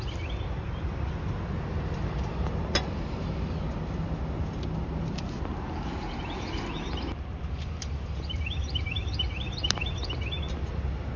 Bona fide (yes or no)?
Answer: yes